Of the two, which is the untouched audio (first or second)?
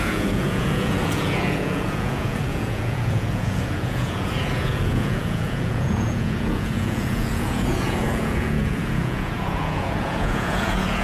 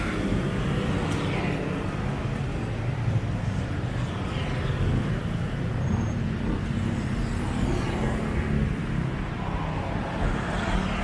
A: second